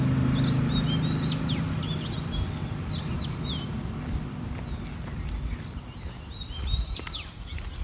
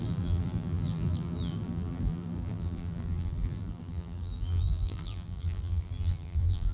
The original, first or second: first